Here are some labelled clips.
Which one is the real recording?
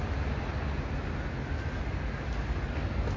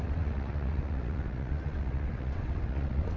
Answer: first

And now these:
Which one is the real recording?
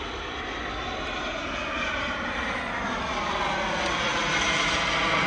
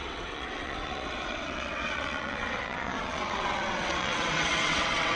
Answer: first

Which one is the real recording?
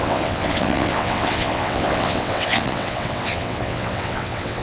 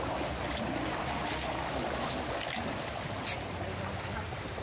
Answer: second